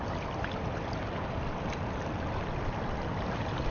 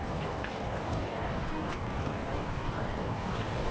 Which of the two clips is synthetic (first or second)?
second